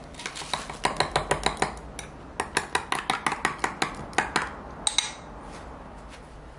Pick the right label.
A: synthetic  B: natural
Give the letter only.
B